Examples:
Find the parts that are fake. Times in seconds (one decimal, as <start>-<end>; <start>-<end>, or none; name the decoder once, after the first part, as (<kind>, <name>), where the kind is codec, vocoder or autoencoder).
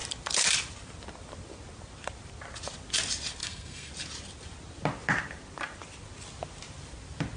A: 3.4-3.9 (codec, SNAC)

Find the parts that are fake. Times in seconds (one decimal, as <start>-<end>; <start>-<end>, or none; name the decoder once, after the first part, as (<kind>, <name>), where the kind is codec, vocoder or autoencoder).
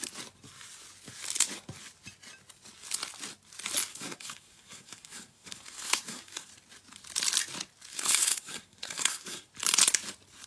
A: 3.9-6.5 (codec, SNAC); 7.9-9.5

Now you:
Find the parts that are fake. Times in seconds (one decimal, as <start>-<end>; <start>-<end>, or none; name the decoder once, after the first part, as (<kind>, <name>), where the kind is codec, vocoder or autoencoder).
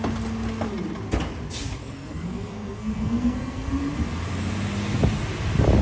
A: 1.8-3.7 (codec, SNAC)